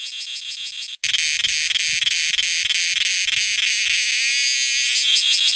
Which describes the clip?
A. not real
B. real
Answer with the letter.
B